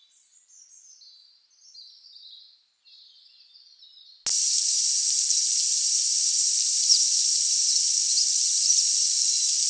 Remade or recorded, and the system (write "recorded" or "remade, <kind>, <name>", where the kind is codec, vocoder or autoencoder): recorded